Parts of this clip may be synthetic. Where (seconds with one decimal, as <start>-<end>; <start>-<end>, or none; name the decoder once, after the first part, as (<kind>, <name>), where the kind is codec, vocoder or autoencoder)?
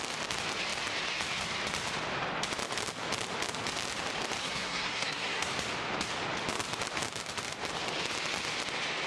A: 4.4-5.5 (codec, SNAC)